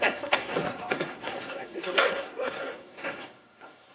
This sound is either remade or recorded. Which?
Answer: remade